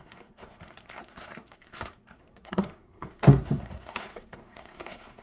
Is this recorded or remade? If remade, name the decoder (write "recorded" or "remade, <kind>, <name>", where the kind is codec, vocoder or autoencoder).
remade, codec, SNAC